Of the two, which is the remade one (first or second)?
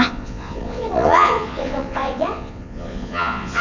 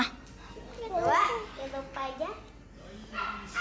first